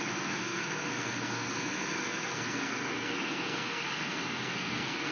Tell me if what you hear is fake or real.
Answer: fake